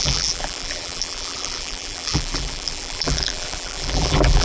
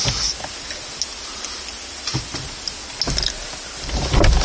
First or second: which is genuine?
second